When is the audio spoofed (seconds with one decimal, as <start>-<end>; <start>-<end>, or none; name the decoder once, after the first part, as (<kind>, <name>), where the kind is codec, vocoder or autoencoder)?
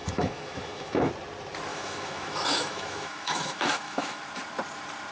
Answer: 0.0-1.1 (autoencoder, DAC-VAE); 1.7-4.2